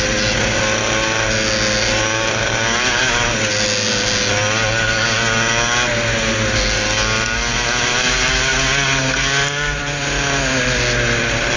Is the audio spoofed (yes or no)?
no